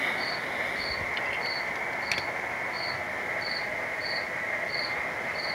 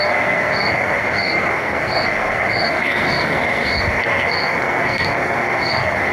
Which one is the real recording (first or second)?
first